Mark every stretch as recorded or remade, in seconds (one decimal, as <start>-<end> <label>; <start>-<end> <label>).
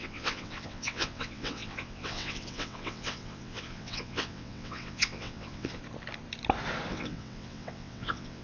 0.0-5.8 remade; 5.8-6.9 recorded; 6.9-8.4 remade